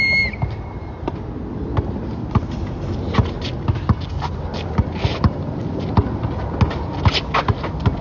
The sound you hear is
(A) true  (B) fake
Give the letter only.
A